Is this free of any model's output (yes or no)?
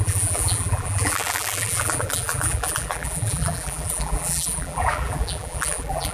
no